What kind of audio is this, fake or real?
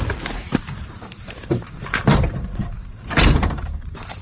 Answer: fake